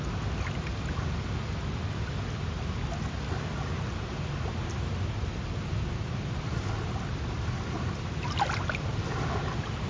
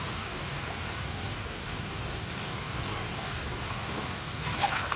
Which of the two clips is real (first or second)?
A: first